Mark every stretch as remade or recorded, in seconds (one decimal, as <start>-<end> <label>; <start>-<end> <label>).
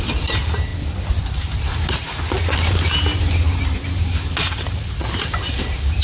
0.0-0.7 remade; 0.7-1.2 recorded; 1.2-6.0 remade